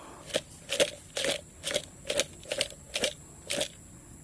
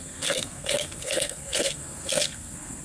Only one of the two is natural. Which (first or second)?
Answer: first